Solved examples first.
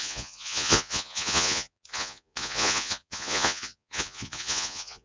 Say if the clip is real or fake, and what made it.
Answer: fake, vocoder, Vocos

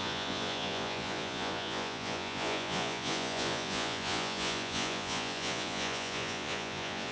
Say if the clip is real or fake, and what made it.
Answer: fake, vocoder, Vocos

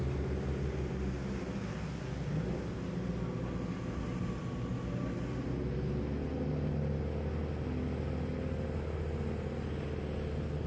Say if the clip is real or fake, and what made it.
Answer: real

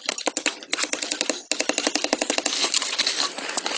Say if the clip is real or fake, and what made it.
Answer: real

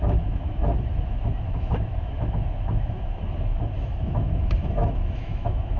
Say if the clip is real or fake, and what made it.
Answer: fake, autoencoder, DAC-VAE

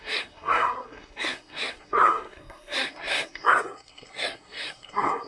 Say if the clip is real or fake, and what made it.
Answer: fake, codec, SNAC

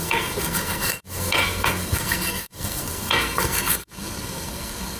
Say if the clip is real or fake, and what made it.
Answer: fake, codec, SNAC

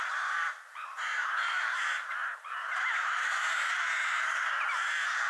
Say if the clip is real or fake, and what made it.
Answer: fake, vocoder, BigVGAN v2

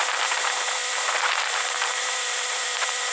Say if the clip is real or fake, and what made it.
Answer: fake, vocoder, BigVGAN v2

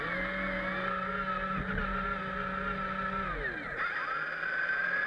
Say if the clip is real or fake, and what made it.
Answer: real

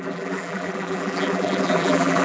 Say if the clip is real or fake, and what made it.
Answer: fake, vocoder, BigVGAN v2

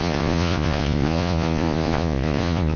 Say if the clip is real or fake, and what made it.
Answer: fake, vocoder, Vocos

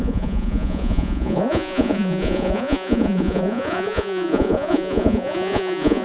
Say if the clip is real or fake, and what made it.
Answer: fake, vocoder, Vocos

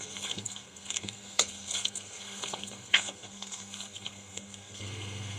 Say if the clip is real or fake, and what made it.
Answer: fake, codec, SNAC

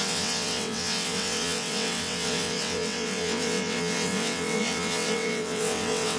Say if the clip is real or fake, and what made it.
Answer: fake, vocoder, WaveNeXt